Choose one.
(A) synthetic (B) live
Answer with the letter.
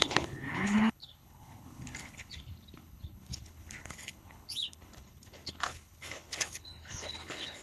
A